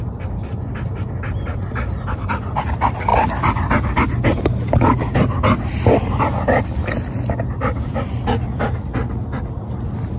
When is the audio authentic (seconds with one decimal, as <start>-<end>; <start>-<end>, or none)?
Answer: 0.0-10.2